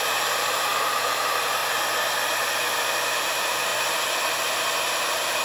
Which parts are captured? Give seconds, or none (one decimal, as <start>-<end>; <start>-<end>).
1.6-2.8; 3.7-4.8